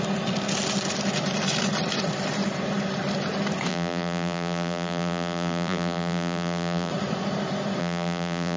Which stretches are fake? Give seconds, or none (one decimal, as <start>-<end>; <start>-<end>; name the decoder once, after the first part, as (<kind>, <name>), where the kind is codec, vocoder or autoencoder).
3.7-6.9 (vocoder, BigVGAN v2); 7.8-8.6